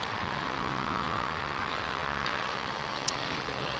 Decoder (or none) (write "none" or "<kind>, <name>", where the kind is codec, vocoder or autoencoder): vocoder, WaveNeXt